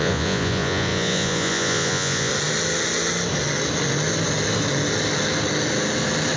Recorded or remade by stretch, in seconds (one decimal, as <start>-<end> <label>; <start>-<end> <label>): 0.0-2.3 remade; 2.3-6.4 recorded